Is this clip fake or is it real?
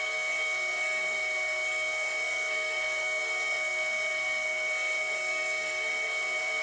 fake